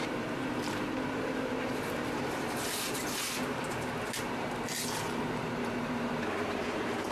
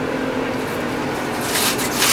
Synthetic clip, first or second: first